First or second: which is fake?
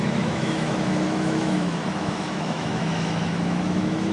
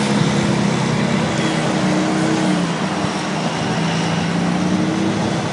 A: first